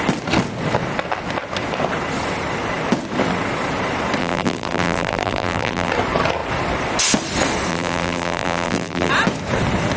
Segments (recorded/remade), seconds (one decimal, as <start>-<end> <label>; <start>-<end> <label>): 0.0-4.2 recorded; 4.2-5.9 remade; 5.9-7.7 recorded; 7.7-9.1 remade; 9.1-10.0 recorded